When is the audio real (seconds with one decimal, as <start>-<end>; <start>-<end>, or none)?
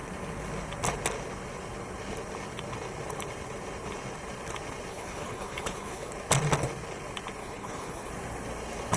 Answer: 0.0-4.9; 6.1-7.4; 8.1-9.0